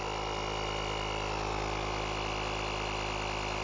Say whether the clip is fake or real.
real